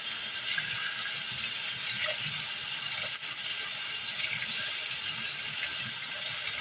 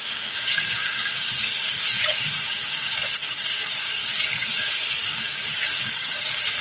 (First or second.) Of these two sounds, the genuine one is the first